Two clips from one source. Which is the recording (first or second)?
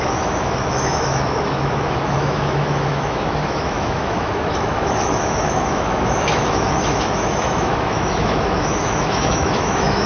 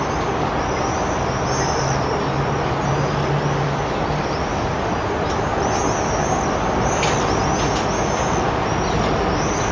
second